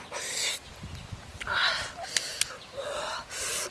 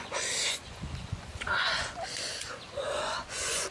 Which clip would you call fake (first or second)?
second